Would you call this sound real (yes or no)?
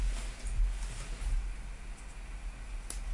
yes